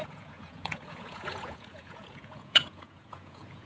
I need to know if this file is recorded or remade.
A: remade